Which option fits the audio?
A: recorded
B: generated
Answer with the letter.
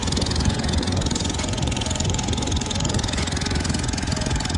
B